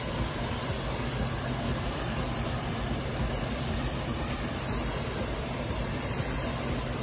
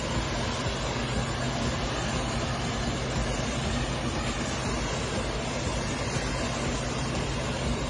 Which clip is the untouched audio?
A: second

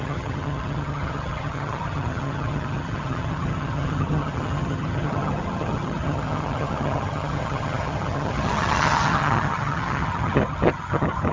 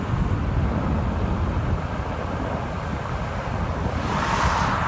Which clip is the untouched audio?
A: second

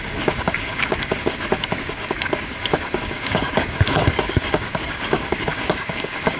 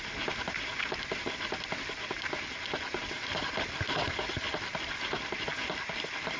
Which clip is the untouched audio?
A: second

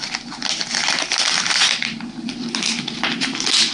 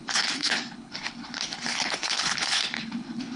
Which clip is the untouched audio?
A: first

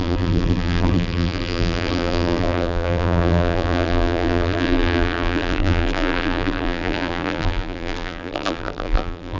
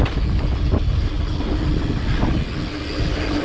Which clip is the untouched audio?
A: second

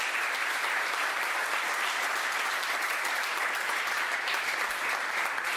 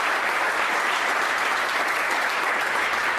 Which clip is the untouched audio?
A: second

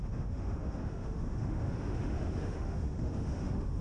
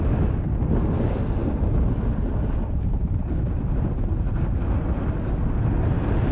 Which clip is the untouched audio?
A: second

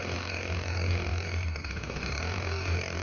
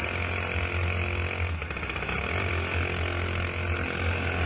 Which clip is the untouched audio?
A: second